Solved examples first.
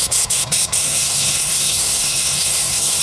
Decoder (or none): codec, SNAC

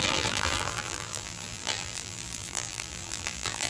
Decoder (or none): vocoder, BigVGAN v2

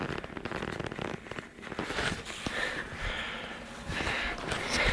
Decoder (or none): none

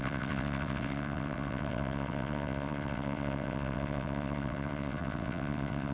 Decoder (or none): vocoder, WaveNeXt